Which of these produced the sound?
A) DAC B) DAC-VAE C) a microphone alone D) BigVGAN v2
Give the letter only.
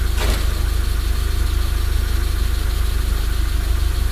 C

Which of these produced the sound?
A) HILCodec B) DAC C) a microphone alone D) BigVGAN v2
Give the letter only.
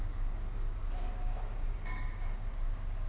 B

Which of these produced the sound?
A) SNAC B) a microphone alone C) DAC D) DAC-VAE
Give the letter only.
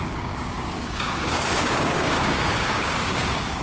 C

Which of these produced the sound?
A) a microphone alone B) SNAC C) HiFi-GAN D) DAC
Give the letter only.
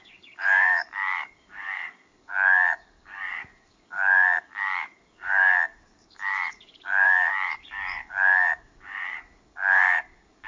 D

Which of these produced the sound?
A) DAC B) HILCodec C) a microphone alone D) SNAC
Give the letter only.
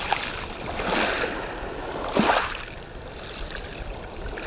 C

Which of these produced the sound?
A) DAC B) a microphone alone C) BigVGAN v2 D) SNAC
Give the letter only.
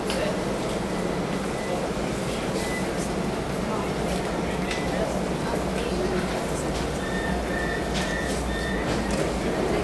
B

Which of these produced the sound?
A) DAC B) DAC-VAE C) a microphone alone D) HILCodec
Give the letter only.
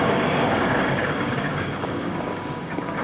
A